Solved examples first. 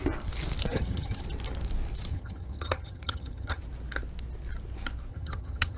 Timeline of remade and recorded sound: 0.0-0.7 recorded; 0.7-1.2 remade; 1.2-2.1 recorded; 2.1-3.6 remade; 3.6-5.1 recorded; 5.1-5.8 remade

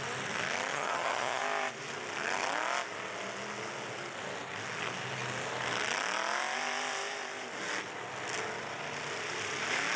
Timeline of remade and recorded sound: 0.0-0.7 recorded; 0.7-1.4 remade; 1.4-10.0 recorded